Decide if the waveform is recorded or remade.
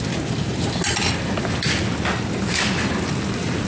recorded